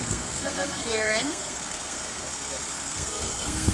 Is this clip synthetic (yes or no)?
yes